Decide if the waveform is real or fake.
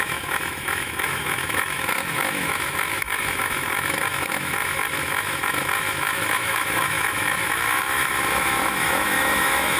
fake